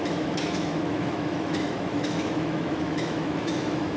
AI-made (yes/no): yes